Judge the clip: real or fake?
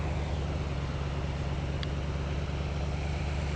real